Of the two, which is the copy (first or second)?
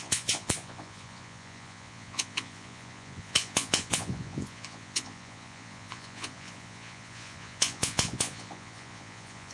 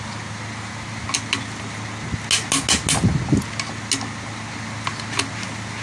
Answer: first